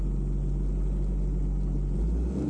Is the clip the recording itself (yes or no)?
yes